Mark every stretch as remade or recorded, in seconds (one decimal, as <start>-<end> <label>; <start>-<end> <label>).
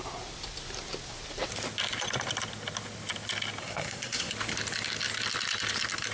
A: 0.0-3.6 recorded; 3.6-4.3 remade; 4.3-6.1 recorded